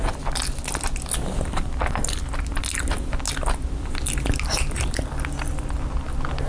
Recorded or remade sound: recorded